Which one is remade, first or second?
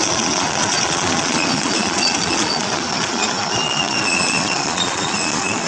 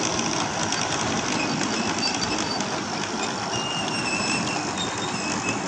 first